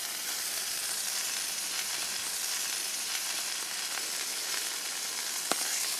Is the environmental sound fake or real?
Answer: fake